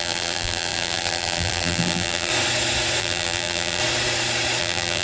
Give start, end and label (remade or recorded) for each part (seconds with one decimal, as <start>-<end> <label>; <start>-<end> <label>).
0.0-2.3 remade; 2.3-3.0 recorded; 3.0-3.8 remade; 3.8-4.6 recorded; 4.6-5.0 remade